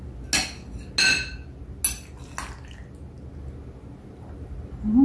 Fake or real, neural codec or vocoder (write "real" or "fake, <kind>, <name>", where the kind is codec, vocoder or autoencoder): real